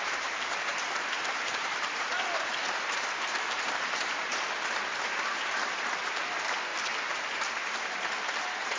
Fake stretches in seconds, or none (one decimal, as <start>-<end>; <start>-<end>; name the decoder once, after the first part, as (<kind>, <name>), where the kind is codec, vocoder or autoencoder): 0.0-6.7 (vocoder, BigVGAN v2); 8.4-8.8